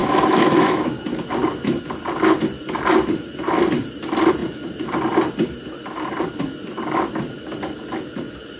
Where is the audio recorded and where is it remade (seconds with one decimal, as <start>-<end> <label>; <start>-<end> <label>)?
0.0-1.0 remade; 1.0-8.6 recorded